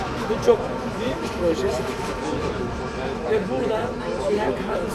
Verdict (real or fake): fake